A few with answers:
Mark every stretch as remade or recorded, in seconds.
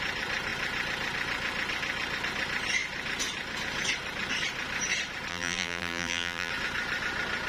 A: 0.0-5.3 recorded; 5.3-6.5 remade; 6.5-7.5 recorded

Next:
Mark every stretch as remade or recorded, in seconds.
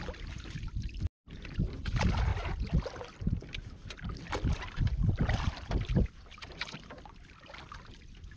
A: 0.0-2.3 recorded; 2.3-5.8 remade; 5.8-8.4 recorded